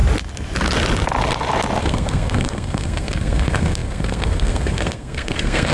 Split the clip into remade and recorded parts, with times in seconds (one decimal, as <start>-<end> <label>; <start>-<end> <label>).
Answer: 0.0-1.8 recorded; 1.8-5.7 remade